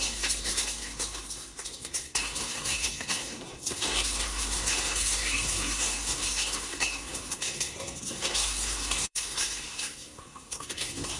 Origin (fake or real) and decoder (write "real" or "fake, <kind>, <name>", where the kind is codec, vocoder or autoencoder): fake, codec, SNAC